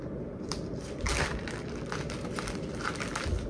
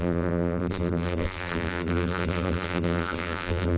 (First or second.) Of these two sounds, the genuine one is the first